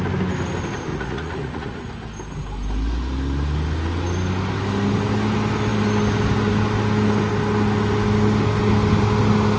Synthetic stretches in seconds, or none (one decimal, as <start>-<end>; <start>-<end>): 0.9-1.9